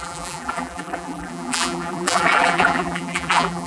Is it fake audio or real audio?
fake